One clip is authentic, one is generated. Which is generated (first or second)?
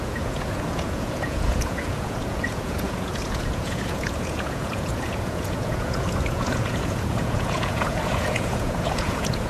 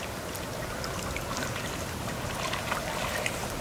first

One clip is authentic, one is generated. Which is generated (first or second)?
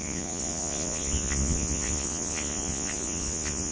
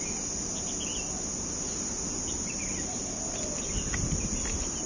first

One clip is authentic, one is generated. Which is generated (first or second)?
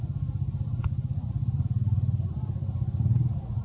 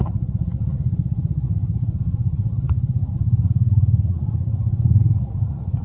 second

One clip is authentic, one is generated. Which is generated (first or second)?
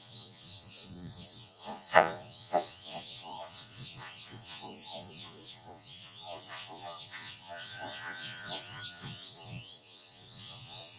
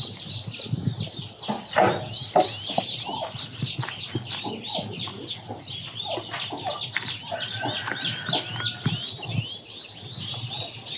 first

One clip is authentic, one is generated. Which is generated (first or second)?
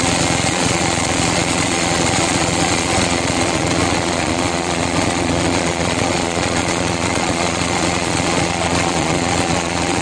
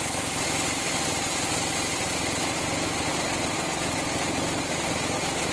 first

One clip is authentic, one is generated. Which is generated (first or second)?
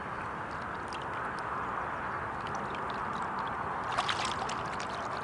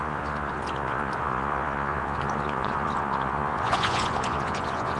second